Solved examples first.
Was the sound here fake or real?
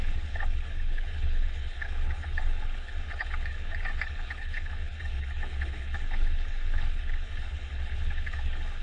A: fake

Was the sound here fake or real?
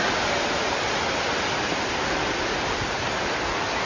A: real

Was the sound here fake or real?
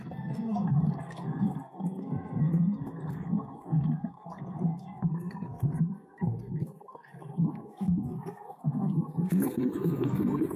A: fake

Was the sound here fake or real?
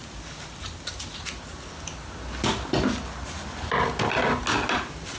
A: real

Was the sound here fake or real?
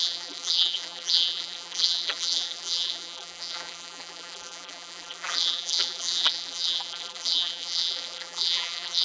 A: fake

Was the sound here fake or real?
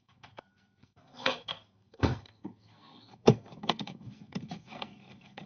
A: fake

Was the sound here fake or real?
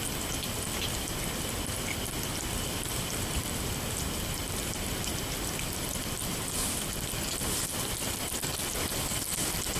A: real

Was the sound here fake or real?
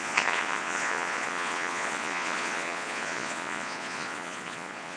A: fake